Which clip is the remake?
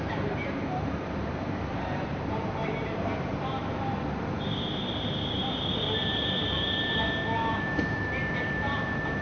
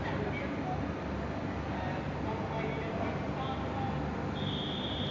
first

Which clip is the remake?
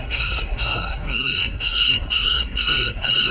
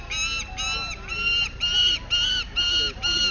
first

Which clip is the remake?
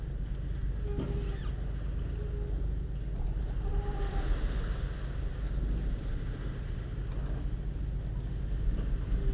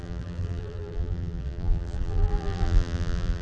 second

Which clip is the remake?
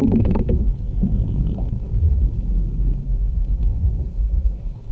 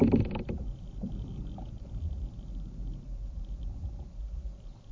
first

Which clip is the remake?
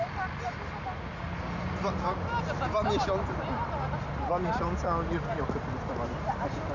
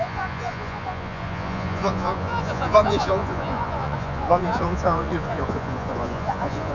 second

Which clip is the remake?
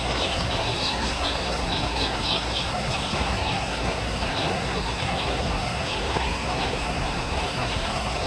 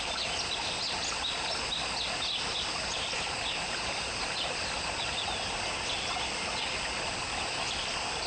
first